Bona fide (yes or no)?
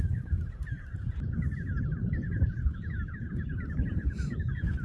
no